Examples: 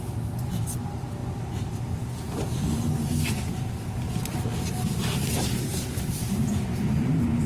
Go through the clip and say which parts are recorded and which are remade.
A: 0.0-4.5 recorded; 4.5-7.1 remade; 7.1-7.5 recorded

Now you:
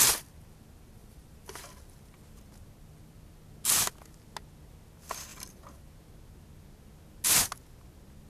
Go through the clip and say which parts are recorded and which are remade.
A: 0.0-1.0 recorded; 1.0-1.6 remade; 1.6-8.3 recorded

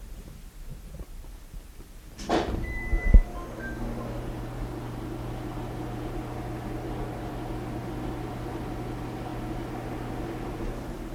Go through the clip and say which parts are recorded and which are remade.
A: 0.0-2.9 remade; 2.9-7.3 recorded; 7.3-7.8 remade; 7.8-8.9 recorded; 8.9-9.3 remade; 9.3-10.6 recorded; 10.6-11.1 remade

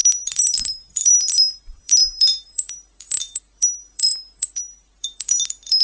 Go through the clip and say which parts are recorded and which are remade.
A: 0.0-5.8 remade

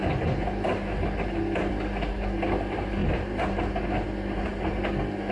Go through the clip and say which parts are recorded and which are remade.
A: 0.0-3.0 recorded; 3.0-3.6 remade; 3.6-5.3 recorded

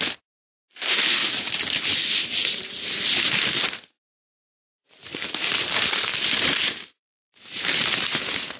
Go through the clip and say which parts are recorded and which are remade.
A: 0.0-4.4 recorded; 4.4-7.6 remade; 7.6-8.6 recorded